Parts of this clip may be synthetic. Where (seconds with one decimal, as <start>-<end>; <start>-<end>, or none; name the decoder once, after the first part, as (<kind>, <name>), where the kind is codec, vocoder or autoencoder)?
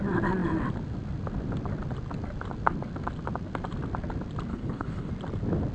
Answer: 4.5-5.1 (codec, HILCodec)